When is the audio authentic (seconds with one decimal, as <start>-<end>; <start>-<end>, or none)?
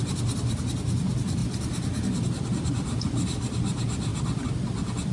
0.0-5.1